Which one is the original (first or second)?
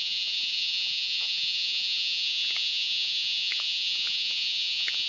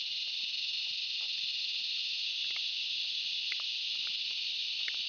second